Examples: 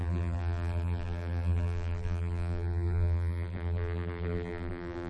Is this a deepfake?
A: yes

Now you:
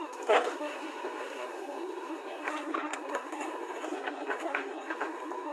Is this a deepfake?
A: yes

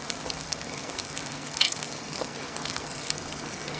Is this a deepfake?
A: yes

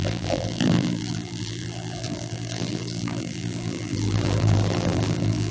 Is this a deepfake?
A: yes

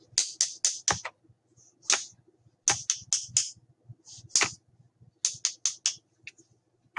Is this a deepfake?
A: no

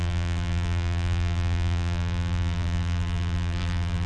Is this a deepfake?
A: yes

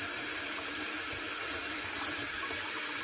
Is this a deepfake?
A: no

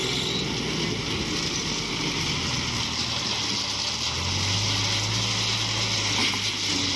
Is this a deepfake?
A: no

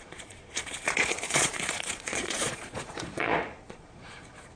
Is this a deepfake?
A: yes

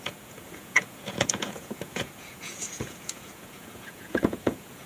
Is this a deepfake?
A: yes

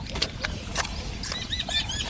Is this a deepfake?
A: no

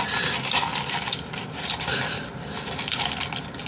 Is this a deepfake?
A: no